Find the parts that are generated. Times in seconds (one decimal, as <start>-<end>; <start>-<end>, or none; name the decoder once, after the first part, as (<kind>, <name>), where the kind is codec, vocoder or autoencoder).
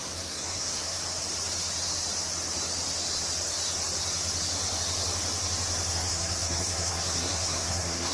0.0-1.0 (codec, SNAC); 5.9-8.1